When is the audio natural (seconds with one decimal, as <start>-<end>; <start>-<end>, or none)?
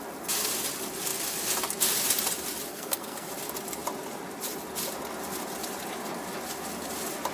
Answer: 0.0-2.7; 3.3-7.3